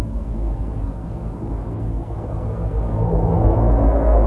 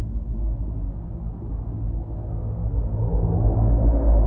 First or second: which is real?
second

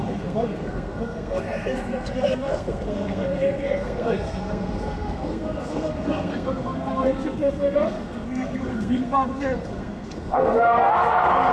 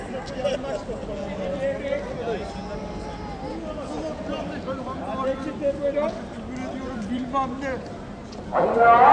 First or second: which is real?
second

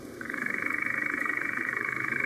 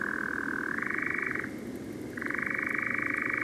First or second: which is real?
second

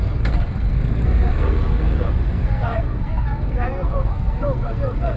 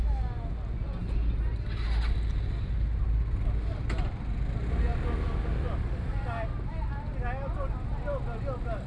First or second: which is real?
second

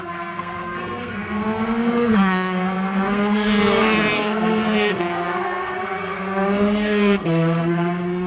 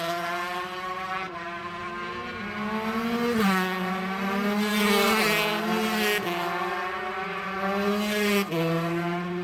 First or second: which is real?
second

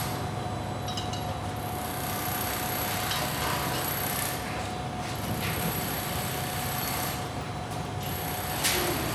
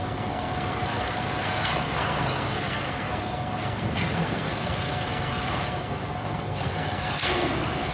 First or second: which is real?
first